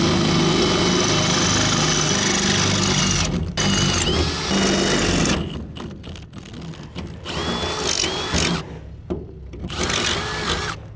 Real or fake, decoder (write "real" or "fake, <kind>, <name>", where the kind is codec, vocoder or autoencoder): real